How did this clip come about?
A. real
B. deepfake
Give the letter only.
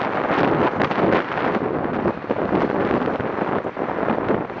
A